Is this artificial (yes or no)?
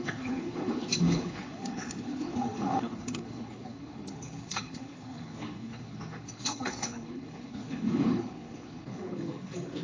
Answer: yes